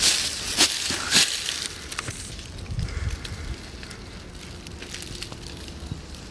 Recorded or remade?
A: recorded